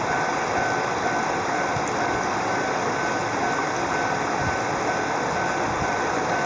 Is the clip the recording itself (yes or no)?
yes